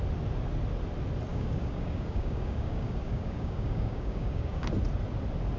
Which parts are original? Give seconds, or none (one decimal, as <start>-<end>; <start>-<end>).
0.0-1.3; 4.7-5.6